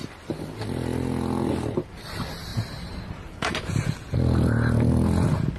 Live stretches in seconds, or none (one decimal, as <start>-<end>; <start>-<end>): 0.0-2.5; 3.7-5.6